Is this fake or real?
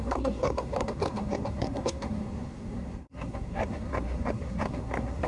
fake